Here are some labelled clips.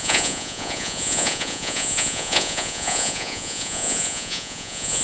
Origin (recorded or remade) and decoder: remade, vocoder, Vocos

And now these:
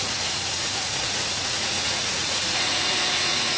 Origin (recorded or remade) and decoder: remade, vocoder, Vocos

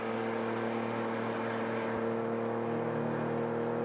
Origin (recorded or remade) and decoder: recorded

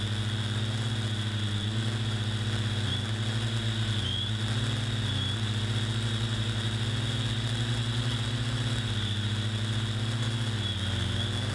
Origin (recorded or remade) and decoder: recorded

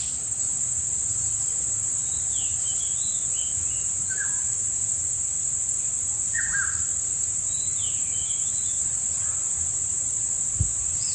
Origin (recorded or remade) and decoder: recorded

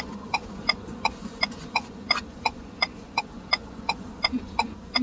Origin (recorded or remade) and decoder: remade, vocoder, Vocos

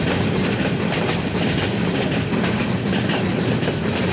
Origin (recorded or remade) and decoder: recorded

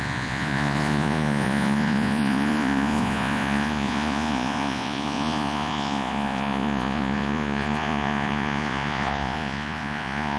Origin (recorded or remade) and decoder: remade, vocoder, Vocos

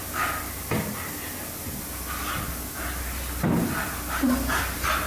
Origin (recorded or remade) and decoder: recorded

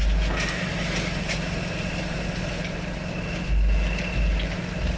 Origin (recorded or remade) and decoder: recorded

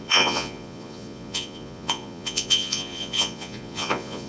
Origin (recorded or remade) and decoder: remade, vocoder, Vocos